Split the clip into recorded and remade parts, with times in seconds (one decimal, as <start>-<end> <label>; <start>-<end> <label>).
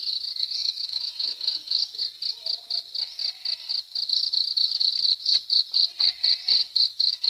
0.0-0.6 recorded; 0.6-2.0 remade; 2.0-6.6 recorded; 6.6-7.3 remade